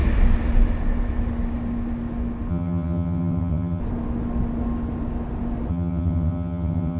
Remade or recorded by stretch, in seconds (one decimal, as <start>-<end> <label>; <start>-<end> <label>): 0.0-2.5 recorded; 2.5-3.8 remade; 3.8-5.7 recorded; 5.7-7.0 remade

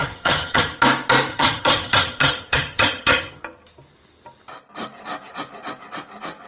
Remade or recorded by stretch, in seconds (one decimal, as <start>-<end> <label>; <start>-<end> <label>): 0.0-0.8 remade; 0.8-1.3 recorded; 1.3-3.4 remade; 3.4-6.5 recorded

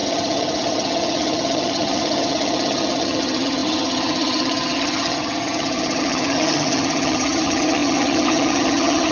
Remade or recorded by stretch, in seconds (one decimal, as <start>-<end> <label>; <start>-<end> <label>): 0.0-9.1 remade

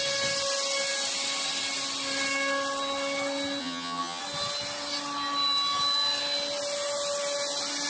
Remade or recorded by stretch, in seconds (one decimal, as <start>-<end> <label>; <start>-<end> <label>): 0.0-3.6 recorded; 3.6-4.2 remade; 4.2-7.9 recorded

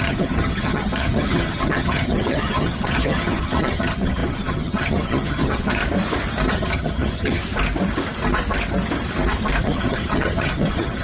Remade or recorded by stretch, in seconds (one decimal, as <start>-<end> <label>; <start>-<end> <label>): 0.0-5.8 remade; 5.8-6.5 recorded; 6.5-7.4 remade; 7.4-9.6 recorded; 9.6-11.0 remade

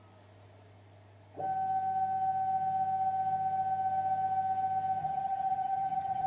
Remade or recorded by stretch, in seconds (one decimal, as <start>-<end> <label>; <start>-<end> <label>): 0.0-5.0 recorded; 5.0-6.3 remade

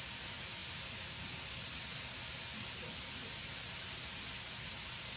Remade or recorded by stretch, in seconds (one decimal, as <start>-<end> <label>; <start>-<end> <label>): 0.0-5.2 recorded